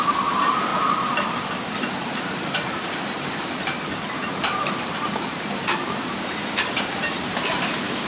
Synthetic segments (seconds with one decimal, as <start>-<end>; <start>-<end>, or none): 0.0-0.7; 1.7-8.1